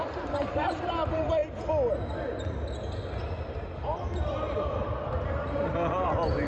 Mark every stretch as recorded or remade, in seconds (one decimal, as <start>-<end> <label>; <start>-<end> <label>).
0.0-1.4 remade; 1.4-5.3 recorded; 5.3-6.5 remade